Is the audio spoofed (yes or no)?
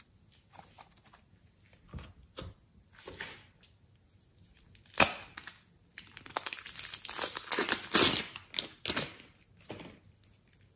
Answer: no